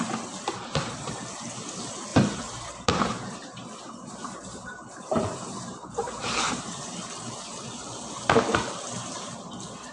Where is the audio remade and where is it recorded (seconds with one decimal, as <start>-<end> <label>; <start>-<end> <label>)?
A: 0.0-9.9 remade